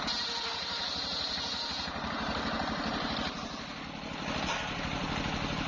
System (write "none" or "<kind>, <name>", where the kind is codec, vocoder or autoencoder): none